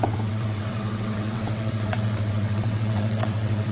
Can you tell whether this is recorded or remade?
remade